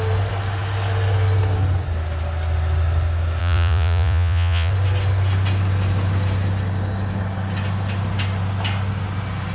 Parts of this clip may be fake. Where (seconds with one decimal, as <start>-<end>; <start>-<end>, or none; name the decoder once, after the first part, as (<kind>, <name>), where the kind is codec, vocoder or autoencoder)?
3.4-4.7 (vocoder, Vocos)